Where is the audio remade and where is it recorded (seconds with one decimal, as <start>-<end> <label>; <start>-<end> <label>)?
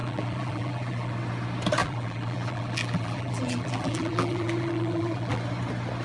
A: 0.0-1.1 remade; 1.1-1.8 recorded; 1.8-5.4 remade; 5.4-6.0 recorded